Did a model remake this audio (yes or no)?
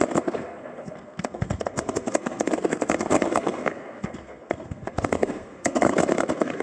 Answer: yes